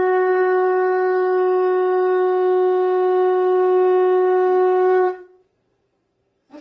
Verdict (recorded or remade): remade